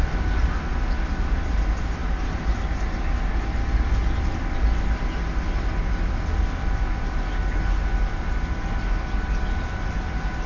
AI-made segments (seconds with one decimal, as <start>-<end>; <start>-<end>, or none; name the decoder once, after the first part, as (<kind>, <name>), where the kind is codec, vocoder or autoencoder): none